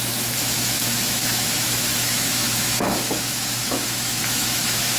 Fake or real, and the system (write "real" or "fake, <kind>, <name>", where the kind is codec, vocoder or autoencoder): fake, autoencoder, DAC-VAE